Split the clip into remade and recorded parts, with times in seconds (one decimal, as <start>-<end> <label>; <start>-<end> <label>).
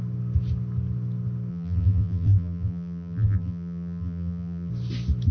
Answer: 0.0-1.5 recorded; 1.5-4.7 remade; 4.7-5.3 recorded